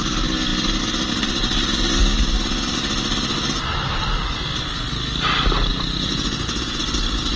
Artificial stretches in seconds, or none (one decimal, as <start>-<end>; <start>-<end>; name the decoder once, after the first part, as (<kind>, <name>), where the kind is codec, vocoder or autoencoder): 5.7-6.8 (vocoder, Vocos)